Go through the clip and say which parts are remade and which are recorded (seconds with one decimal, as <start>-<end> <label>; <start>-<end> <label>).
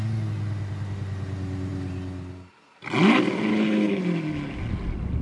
0.0-3.5 recorded; 3.5-4.0 remade; 4.0-5.2 recorded